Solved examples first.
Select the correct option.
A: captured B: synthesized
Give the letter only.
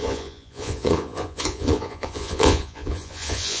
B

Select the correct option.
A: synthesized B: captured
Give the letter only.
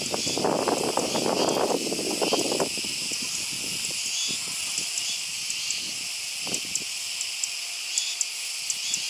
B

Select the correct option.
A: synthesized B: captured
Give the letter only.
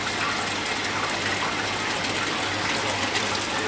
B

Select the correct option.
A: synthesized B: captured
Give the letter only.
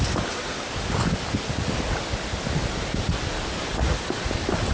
B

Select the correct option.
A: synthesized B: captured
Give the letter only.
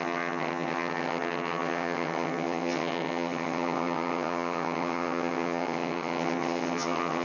A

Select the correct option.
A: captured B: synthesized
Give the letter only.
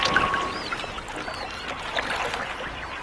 A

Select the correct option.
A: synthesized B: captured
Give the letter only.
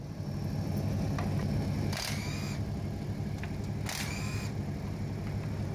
B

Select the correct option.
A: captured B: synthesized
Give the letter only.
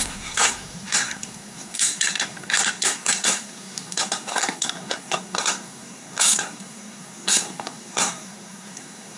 B